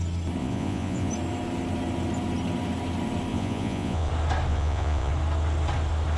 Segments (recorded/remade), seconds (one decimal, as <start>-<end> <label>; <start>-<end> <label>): 0.0-0.4 recorded; 0.4-1.1 remade; 1.1-3.3 recorded; 3.3-4.1 remade; 4.1-4.5 recorded; 4.5-5.1 remade; 5.1-6.2 recorded

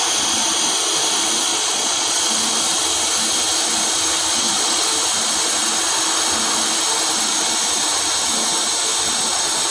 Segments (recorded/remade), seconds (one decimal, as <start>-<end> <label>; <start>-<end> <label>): 0.0-1.5 recorded; 1.5-2.2 remade; 2.2-4.3 recorded; 4.3-4.9 remade; 4.9-9.7 recorded